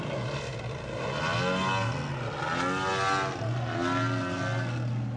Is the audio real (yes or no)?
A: yes